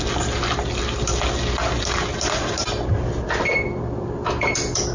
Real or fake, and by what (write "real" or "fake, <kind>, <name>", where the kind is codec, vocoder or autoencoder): real